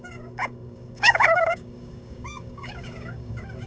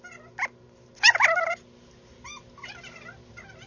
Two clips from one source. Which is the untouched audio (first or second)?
second